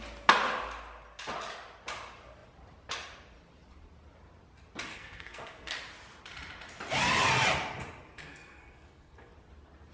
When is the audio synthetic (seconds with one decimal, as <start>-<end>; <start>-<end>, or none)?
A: 4.9-5.7; 8.1-9.3